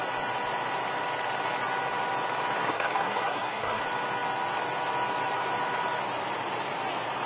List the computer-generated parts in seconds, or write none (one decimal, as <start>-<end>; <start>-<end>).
2.6-3.8